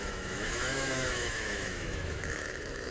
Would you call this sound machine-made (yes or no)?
yes